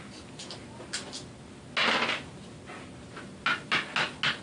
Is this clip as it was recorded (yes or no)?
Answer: yes